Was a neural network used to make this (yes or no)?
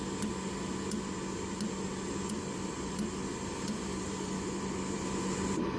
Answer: no